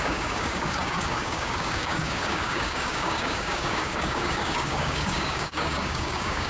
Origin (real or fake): fake